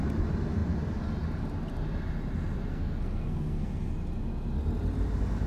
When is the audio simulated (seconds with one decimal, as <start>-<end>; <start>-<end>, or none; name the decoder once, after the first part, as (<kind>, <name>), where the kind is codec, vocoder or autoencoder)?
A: 2.7-3.9 (codec, SNAC)